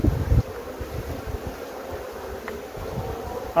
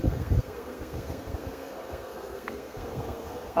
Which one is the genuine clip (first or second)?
first